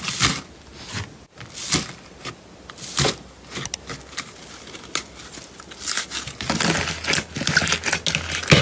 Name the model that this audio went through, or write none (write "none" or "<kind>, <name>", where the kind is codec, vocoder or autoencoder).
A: none